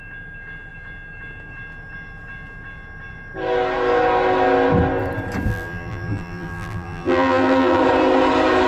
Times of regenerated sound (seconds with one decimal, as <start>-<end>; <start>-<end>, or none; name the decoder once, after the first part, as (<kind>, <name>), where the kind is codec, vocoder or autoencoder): 5.5-7.8 (vocoder, BigVGAN v2)